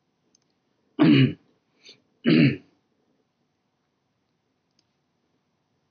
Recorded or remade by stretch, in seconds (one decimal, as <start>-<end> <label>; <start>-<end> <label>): 0.0-5.9 recorded